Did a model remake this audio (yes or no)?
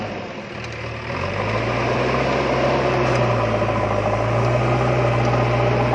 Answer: no